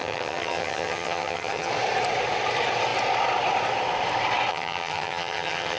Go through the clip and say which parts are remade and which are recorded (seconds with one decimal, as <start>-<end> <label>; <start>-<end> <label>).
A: 0.0-1.7 remade; 1.7-4.5 recorded; 4.5-5.8 remade